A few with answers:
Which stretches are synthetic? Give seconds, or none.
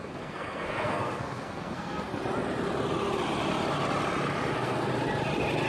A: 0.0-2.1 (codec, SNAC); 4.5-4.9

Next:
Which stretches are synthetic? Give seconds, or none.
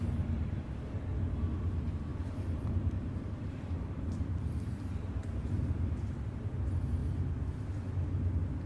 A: 2.1-5.5 (vocoder, BigVGAN v2)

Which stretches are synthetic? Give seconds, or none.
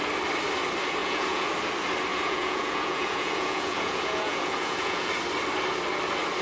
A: 1.0-1.5 (vocoder, Vocos); 2.1-5.1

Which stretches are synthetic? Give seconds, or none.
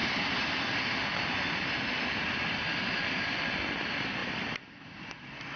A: none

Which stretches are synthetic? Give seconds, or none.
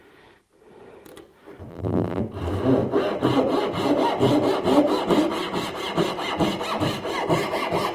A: 1.7-2.2 (vocoder, BigVGAN v2)